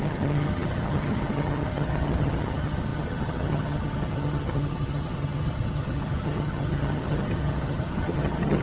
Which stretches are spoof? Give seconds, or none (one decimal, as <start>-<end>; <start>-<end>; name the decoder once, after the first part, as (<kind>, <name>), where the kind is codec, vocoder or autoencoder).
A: 0.0-8.6 (vocoder, HiFi-GAN)